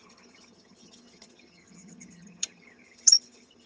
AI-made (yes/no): yes